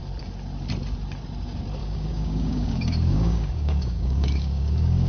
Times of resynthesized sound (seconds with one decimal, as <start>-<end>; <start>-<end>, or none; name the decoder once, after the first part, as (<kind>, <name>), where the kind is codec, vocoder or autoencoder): 1.8-5.1 (codec, DAC)